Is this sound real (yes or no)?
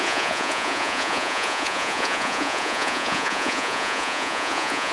no